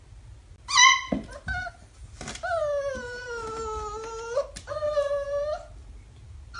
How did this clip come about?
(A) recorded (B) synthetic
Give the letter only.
A